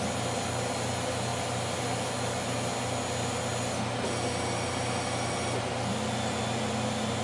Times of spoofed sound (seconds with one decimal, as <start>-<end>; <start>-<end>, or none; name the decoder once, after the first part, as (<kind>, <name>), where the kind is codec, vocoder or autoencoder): none